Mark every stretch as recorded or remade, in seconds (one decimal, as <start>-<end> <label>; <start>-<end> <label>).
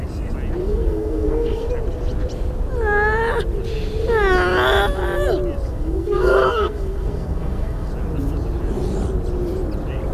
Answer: 0.0-0.6 recorded; 0.6-1.7 remade; 1.7-5.7 recorded; 5.7-7.9 remade; 7.9-10.1 recorded